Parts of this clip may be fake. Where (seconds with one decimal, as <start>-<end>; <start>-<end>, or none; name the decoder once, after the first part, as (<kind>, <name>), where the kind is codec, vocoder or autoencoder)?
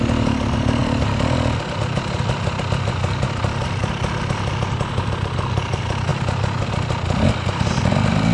none